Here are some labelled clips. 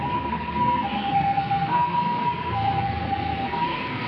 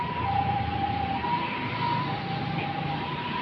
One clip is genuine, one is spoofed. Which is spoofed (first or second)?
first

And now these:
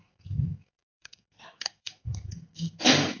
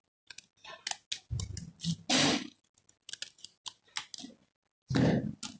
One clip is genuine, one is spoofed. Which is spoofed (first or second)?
first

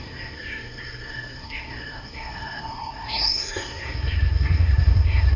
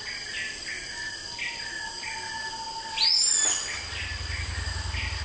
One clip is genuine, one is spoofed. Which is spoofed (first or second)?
first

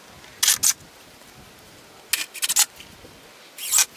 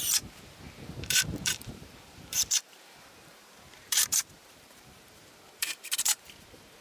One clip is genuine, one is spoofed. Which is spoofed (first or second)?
second